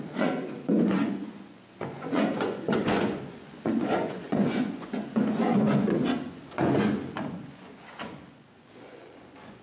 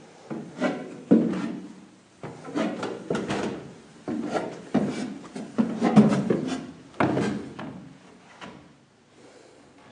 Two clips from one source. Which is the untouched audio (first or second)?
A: second